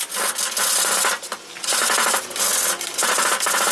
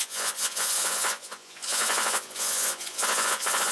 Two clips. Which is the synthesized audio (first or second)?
second